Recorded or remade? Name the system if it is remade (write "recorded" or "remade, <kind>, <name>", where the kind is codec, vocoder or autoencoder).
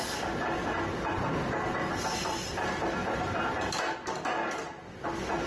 recorded